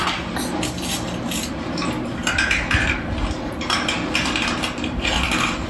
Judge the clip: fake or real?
real